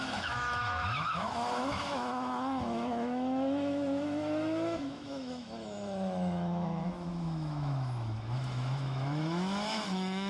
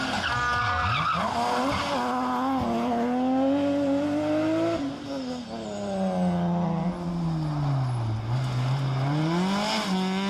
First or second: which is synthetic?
first